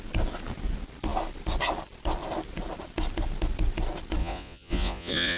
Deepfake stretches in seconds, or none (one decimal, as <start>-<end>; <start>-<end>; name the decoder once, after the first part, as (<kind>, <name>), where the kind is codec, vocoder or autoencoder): 4.2-5.4 (vocoder, Vocos)